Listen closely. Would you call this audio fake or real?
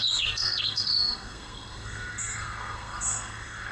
fake